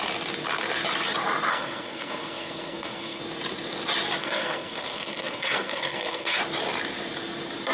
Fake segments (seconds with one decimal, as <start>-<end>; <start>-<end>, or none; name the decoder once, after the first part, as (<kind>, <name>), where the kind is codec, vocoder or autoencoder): 1.5-3.2 (codec, SNAC); 4.2-6.4